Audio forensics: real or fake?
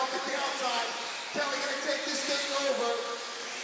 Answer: real